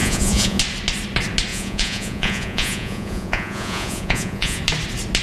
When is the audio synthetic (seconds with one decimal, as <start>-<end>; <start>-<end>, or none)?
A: 0.0-0.6; 1.5-4.6